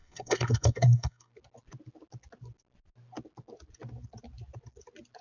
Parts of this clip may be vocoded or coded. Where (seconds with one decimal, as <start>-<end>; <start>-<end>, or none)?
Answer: 0.0-1.3